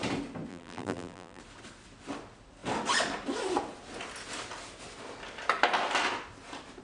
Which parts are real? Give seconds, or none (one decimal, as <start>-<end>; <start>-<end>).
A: 0.0-0.5; 1.4-6.8